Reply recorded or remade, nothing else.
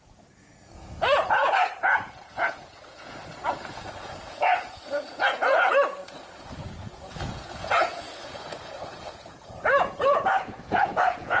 remade